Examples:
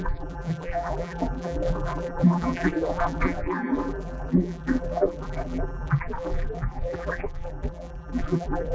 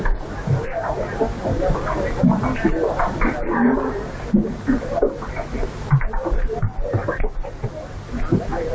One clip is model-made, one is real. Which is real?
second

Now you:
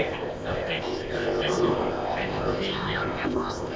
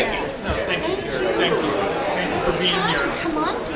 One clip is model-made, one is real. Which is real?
second